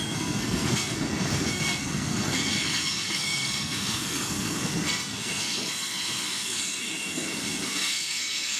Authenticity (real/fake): fake